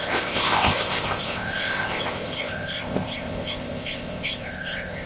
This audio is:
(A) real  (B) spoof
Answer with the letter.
B